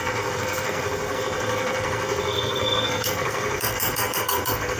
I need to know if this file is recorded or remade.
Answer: remade